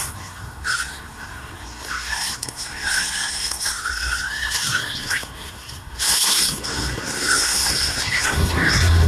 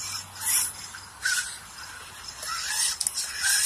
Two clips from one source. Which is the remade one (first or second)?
first